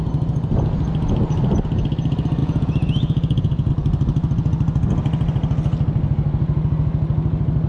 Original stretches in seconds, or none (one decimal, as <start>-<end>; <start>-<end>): 0.0-2.4; 3.7-7.7